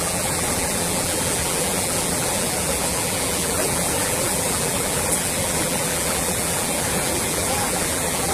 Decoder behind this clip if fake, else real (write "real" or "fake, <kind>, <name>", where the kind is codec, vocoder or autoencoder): fake, vocoder, BigVGAN v2